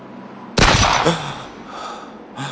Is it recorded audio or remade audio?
recorded